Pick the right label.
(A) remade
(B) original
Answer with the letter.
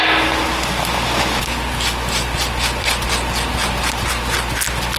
B